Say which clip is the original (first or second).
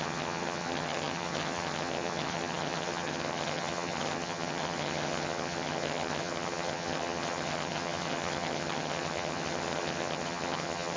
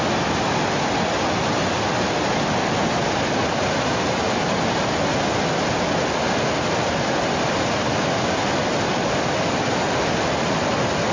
second